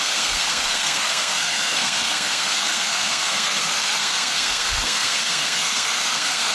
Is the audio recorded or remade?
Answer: remade